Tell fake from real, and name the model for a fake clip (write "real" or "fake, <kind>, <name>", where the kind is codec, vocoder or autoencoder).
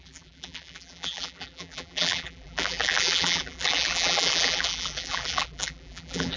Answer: fake, vocoder, BigVGAN v2